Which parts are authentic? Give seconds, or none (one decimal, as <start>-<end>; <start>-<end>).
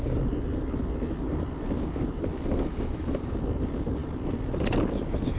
0.0-2.7; 3.4-5.4